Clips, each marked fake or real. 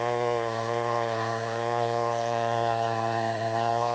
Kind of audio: fake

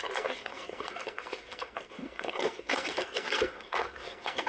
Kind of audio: fake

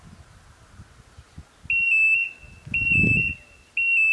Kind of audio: real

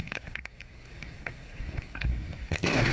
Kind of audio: fake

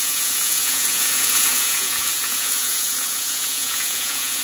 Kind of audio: fake